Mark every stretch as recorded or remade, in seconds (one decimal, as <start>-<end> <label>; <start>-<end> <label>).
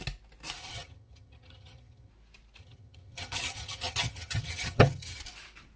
0.0-0.6 recorded; 0.6-2.1 remade; 2.1-2.6 recorded; 2.6-5.2 remade; 5.2-5.8 recorded